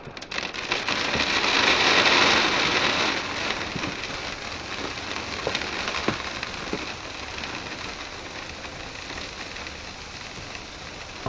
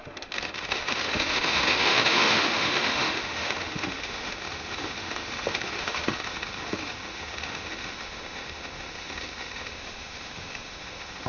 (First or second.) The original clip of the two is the first